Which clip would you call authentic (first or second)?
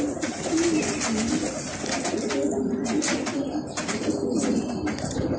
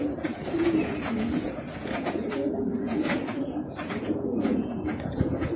first